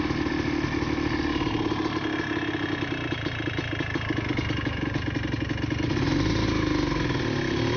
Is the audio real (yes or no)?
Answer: yes